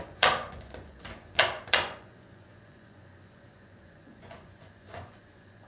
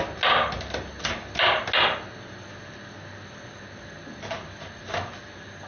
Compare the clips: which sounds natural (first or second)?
second